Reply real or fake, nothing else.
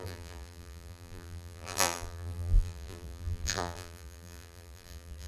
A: fake